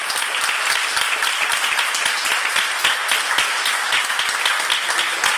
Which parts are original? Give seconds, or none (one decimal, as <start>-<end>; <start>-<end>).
1.6-3.5; 4.4-5.4